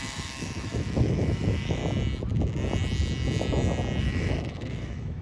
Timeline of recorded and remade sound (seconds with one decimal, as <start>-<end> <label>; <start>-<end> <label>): 0.0-1.8 remade; 1.8-4.0 recorded; 4.0-5.2 remade

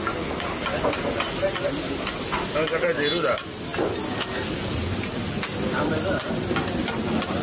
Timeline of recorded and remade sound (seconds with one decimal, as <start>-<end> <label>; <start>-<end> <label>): 0.0-7.4 recorded

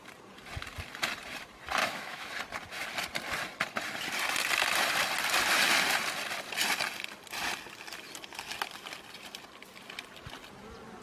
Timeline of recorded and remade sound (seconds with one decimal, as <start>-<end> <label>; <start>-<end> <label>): 0.0-1.8 recorded; 1.8-2.3 remade; 2.3-11.0 recorded

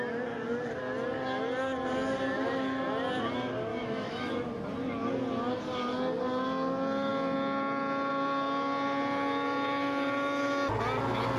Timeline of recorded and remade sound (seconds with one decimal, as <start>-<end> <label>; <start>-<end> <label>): 0.0-3.7 recorded; 3.7-4.3 remade; 4.3-11.4 recorded

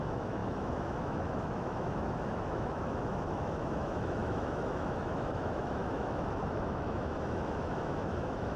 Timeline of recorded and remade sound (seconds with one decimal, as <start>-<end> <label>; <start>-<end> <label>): 0.0-8.6 remade

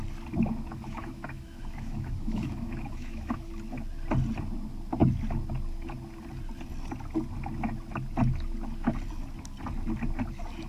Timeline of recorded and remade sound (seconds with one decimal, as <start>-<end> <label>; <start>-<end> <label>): 0.0-0.7 recorded; 0.7-3.5 remade; 3.5-10.7 recorded